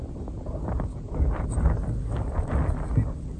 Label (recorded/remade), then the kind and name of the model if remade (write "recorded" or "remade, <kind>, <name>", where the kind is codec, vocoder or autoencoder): recorded